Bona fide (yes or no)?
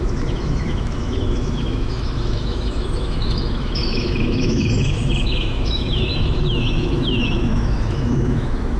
no